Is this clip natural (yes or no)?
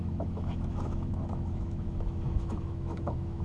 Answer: no